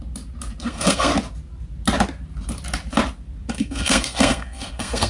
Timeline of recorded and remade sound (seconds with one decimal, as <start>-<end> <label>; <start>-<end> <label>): 0.0-0.6 recorded; 0.6-1.1 remade; 1.1-3.5 recorded; 3.5-5.1 remade